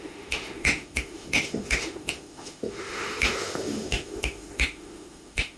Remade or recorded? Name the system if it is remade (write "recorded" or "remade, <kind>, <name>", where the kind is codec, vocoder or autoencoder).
remade, autoencoder, DAC-VAE